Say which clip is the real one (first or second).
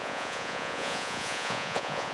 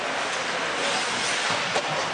second